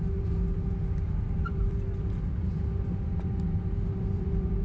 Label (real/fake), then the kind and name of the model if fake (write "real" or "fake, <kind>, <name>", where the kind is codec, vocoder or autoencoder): fake, vocoder, BigVGAN v2